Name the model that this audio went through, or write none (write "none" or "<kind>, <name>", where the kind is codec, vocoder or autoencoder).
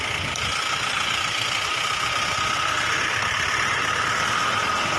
none